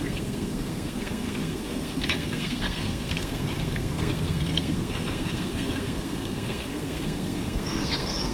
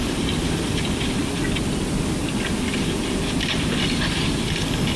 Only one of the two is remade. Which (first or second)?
first